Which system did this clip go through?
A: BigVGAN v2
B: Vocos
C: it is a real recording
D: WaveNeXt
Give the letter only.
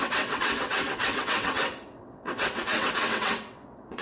D